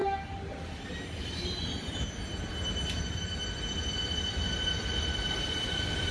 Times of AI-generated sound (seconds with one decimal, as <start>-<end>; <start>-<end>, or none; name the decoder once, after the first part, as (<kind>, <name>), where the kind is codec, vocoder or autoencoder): 1.2-6.1 (vocoder, BigVGAN v2)